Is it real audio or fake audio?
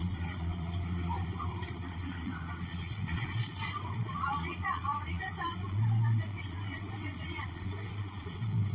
fake